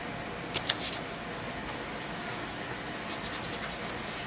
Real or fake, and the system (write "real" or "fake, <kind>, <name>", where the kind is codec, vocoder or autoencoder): real